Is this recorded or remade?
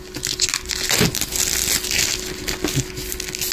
recorded